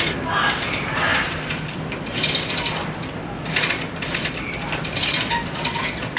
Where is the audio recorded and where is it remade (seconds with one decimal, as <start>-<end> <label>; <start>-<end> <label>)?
0.0-1.1 recorded; 1.1-2.5 remade; 2.5-4.2 recorded; 4.2-5.5 remade; 5.5-6.2 recorded

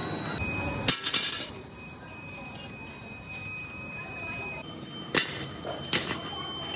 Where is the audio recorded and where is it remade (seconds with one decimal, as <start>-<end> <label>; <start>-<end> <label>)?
0.0-1.5 recorded; 1.5-6.8 remade

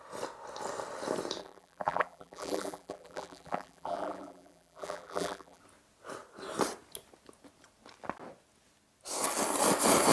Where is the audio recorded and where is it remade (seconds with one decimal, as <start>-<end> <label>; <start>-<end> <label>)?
0.0-1.4 recorded; 1.4-5.6 remade; 5.6-10.1 recorded

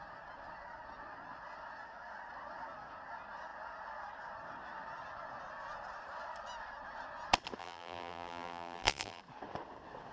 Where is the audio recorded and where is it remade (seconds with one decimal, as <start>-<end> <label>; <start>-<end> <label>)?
0.0-7.6 recorded; 7.6-9.2 remade; 9.2-10.1 recorded